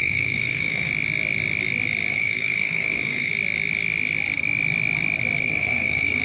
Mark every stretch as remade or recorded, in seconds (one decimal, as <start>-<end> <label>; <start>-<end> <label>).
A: 0.0-0.9 remade; 0.9-2.1 recorded; 2.1-3.3 remade; 3.3-5.4 recorded; 5.4-6.2 remade